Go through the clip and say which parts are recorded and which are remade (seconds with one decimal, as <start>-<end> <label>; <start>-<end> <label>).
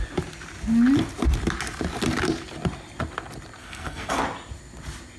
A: 0.0-3.6 recorded; 3.6-4.2 remade; 4.2-5.2 recorded